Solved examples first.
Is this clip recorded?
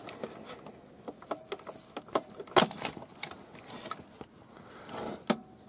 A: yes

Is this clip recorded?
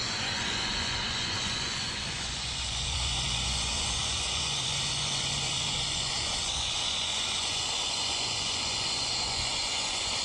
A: no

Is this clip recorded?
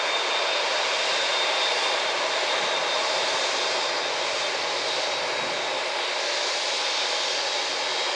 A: yes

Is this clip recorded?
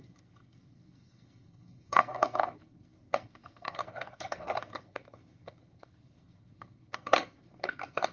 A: no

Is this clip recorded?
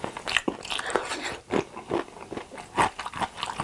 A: yes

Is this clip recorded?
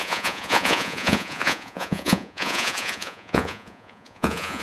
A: no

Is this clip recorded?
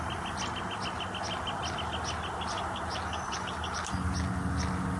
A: yes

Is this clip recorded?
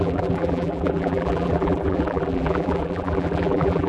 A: no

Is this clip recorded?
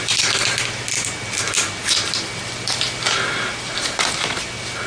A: yes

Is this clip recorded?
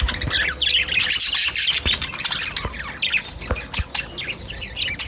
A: yes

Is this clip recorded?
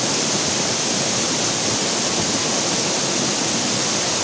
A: yes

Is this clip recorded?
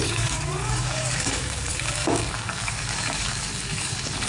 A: no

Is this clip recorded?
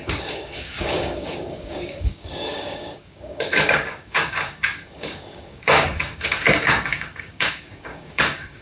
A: no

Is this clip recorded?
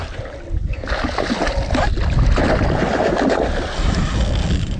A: yes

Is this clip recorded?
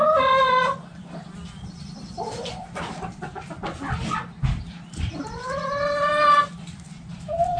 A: yes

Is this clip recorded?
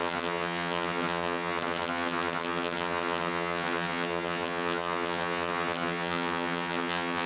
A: no